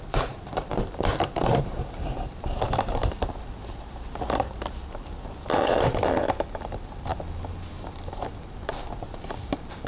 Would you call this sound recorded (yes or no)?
no